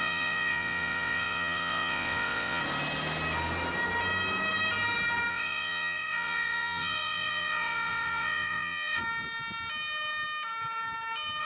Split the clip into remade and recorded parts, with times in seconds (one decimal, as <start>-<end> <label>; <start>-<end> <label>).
0.0-2.6 remade; 2.6-5.3 recorded; 5.3-9.0 remade; 9.0-11.4 recorded